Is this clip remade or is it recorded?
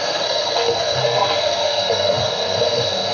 remade